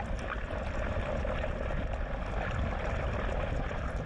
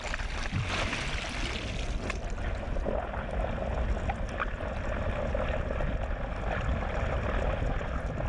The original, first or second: second